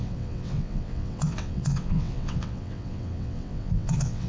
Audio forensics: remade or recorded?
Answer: remade